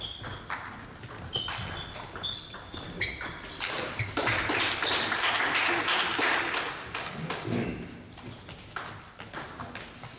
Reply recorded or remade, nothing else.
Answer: recorded